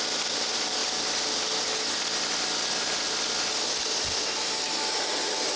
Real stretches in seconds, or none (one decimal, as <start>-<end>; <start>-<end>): 0.0-5.6